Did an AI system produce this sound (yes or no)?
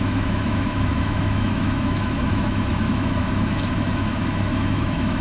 yes